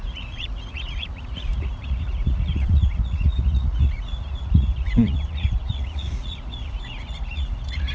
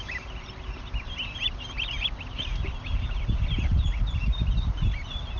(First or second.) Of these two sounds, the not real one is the first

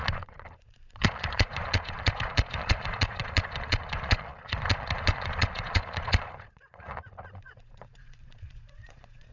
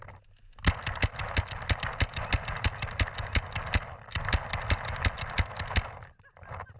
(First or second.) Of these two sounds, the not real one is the first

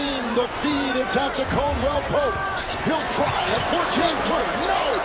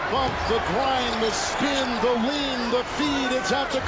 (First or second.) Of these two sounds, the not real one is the first